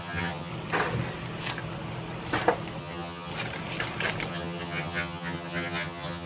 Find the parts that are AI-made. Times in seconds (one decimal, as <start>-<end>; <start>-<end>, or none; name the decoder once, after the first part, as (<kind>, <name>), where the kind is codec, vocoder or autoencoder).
0.0-0.5 (vocoder, HiFi-GAN); 2.8-3.3; 4.3-6.3